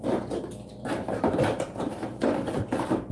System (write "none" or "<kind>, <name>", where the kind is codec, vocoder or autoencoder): vocoder, BigVGAN v2